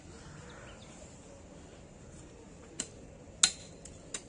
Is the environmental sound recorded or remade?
recorded